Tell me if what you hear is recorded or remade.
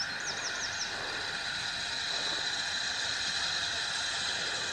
recorded